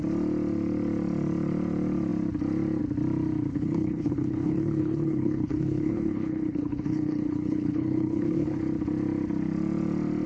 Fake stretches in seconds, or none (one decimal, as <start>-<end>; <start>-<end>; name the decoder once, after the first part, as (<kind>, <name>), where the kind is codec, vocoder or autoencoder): 3.5-8.6 (codec, HILCodec)